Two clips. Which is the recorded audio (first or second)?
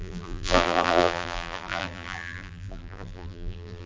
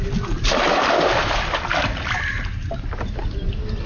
second